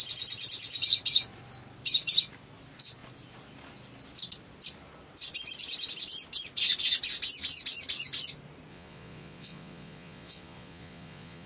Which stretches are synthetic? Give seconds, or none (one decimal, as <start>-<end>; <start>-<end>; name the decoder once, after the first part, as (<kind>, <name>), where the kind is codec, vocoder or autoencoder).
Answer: 8.7-11.5 (vocoder, Vocos)